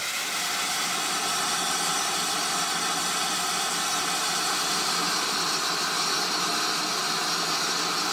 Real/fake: real